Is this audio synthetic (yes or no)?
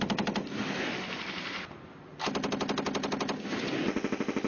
no